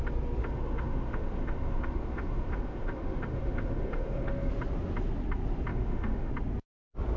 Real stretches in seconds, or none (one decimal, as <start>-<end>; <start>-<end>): 0.0-0.4; 4.5-5.7; 6.3-7.2